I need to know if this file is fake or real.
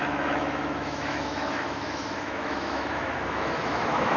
fake